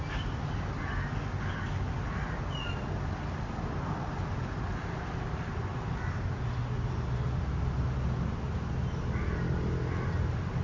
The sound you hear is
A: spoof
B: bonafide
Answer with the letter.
B